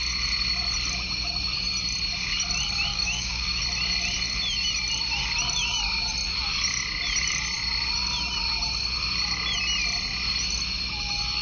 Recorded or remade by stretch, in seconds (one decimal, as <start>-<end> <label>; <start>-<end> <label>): 0.0-2.9 recorded; 2.9-3.6 remade; 3.6-11.4 recorded